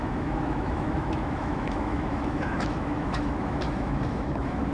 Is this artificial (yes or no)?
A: yes